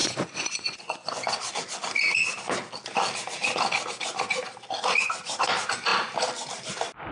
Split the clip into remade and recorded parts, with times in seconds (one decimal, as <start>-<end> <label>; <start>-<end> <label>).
0.0-1.3 remade; 1.3-7.1 recorded